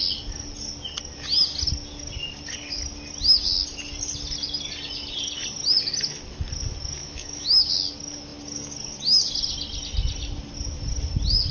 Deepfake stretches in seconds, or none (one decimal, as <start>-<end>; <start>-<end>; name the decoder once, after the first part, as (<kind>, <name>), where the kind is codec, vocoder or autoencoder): 7.0-7.7 (autoencoder, DAC-VAE)